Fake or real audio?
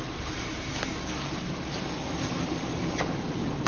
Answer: real